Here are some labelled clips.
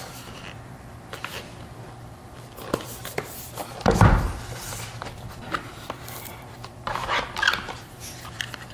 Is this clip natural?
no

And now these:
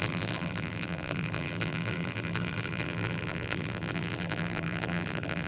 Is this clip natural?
no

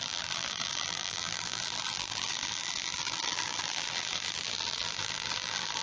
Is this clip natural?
no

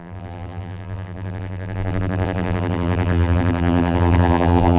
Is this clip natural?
no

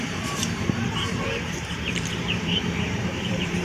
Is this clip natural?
no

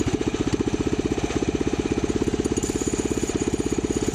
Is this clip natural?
no